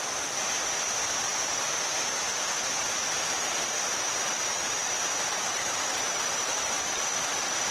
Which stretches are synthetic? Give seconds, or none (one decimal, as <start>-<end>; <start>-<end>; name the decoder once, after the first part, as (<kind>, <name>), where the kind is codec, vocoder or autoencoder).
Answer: 4.8-6.8 (vocoder, BigVGAN v2)